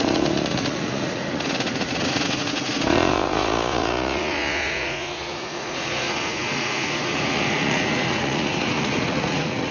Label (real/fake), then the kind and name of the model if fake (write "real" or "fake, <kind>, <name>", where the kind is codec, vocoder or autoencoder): fake, vocoder, Vocos